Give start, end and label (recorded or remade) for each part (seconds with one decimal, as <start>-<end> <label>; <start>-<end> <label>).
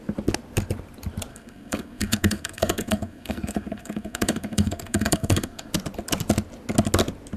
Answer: 0.0-1.3 recorded; 1.3-5.7 remade; 5.7-7.4 recorded